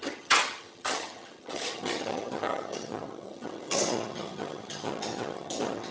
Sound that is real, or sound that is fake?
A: fake